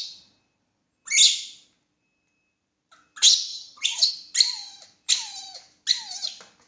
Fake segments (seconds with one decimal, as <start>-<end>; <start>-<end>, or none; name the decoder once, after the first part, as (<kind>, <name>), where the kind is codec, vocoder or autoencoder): 3.5-4.1 (vocoder, HiFi-GAN)